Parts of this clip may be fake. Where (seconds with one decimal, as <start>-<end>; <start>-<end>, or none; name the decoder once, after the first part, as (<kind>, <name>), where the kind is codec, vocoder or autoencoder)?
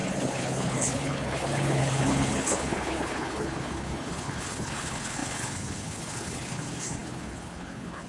0.0-8.1 (codec, HILCodec)